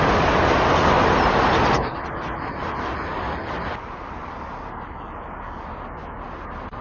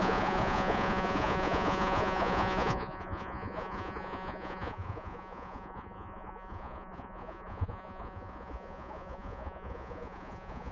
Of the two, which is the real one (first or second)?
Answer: first